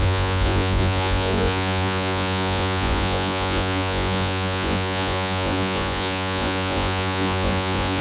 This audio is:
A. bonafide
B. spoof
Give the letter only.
B